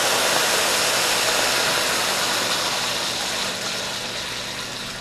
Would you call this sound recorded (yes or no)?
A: yes